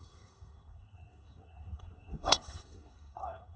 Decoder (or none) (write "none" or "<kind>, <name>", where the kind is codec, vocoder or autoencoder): codec, SNAC